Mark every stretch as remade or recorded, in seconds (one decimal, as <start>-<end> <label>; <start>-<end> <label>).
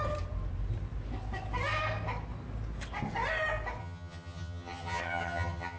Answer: 0.0-3.8 recorded; 3.8-5.8 remade